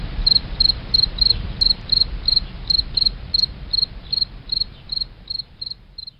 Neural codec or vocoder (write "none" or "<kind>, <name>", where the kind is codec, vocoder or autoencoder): vocoder, BigVGAN v2